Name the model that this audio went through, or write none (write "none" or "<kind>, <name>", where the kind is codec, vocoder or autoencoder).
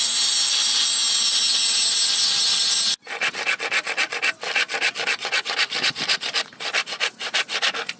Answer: none